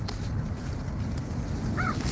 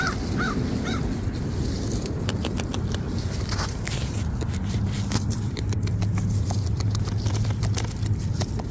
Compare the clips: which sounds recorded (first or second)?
first